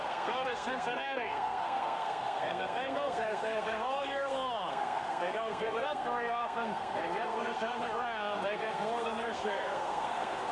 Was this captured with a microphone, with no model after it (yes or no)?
no